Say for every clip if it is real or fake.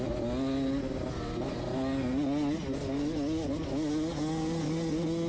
real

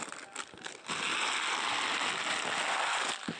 real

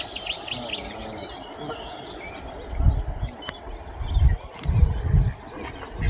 real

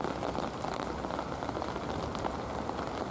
real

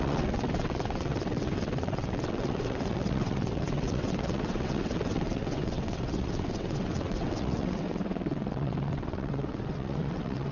fake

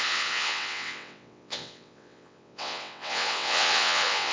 fake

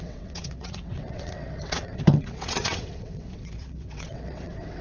fake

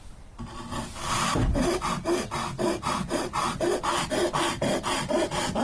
real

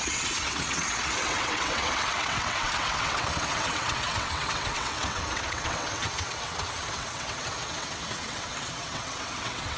fake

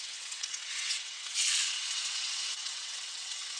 fake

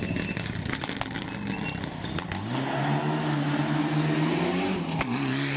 real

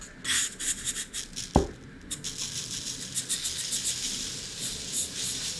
real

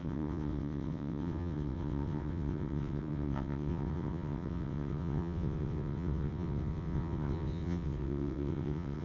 fake